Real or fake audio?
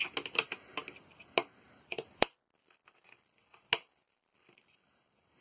real